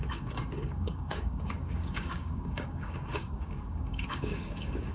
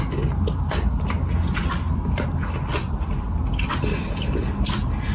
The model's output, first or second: first